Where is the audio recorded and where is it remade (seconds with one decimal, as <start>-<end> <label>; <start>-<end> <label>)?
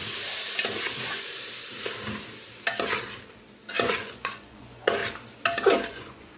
0.0-3.7 recorded; 3.7-5.0 remade; 5.0-5.9 recorded; 5.9-6.4 remade